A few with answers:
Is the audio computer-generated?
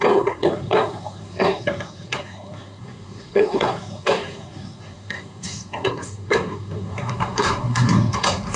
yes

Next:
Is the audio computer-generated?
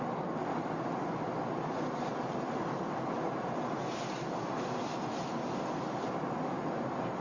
no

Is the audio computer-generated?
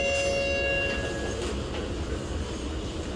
no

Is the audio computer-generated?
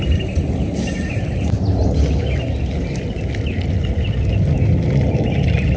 no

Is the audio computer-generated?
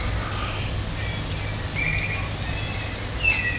no